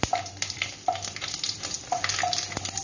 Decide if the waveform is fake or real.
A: real